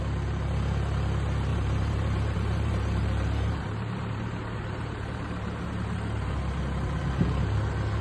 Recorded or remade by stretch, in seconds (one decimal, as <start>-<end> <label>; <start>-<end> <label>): 0.0-1.5 recorded; 1.5-6.3 remade; 6.3-8.0 recorded

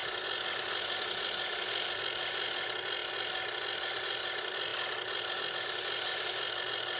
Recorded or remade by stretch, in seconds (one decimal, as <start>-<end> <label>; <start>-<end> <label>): 0.0-7.0 recorded

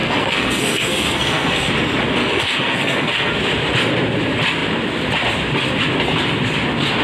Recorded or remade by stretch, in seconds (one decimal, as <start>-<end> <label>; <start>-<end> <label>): 0.0-1.7 remade; 1.7-2.2 recorded; 2.2-3.3 remade; 3.3-7.0 recorded

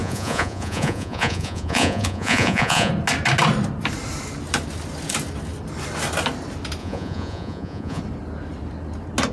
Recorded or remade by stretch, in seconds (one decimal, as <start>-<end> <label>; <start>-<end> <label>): 0.0-2.9 remade; 2.9-6.8 recorded; 6.8-8.0 remade; 8.0-9.3 recorded

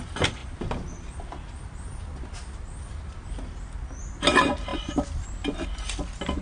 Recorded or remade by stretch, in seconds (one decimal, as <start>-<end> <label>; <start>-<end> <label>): 0.0-6.4 recorded

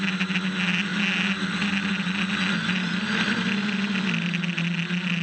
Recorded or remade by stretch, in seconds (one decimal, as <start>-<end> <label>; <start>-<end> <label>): 0.0-5.2 recorded